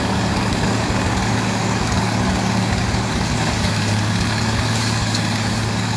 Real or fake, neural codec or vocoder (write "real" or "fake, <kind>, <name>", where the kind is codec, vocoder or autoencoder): fake, codec, DAC